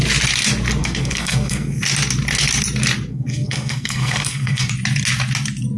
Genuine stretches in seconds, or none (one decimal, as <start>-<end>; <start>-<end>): 0.0-0.8; 1.8-3.1; 4.7-5.8